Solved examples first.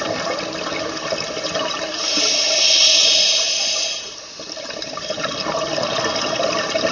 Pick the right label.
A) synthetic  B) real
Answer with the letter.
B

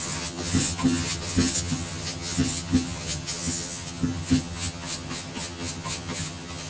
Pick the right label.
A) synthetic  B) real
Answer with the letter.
A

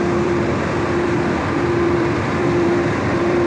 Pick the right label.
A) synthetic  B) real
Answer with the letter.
A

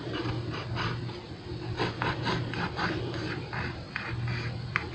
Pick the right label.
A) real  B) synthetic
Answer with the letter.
A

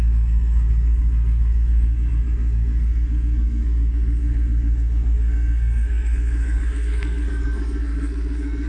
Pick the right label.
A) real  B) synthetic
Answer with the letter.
B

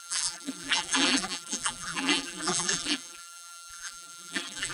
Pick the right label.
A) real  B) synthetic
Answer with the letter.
B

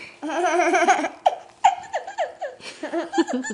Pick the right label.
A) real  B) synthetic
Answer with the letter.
A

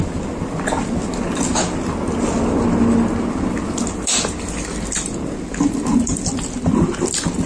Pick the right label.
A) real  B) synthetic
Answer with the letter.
A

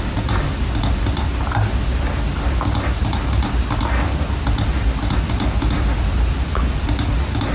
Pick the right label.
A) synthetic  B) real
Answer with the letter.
B